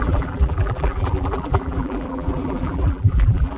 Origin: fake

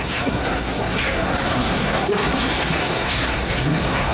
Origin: fake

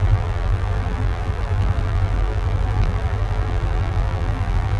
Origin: fake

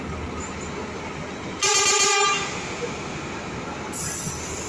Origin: real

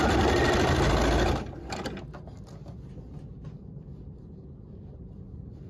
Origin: real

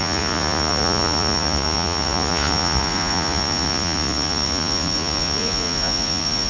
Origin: fake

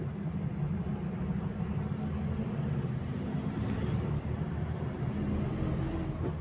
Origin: real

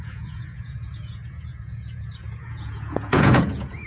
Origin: fake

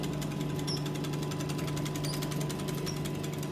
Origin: real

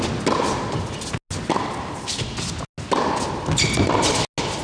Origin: real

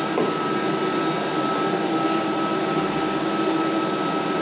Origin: real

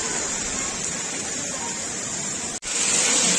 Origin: real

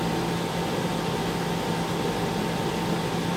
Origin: real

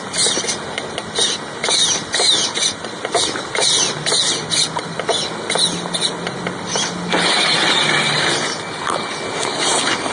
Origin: real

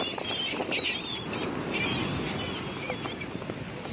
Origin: real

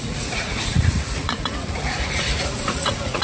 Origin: fake